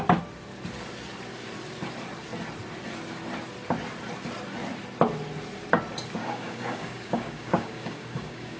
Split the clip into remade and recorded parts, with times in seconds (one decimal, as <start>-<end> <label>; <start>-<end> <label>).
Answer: 0.0-6.2 recorded; 6.2-8.6 remade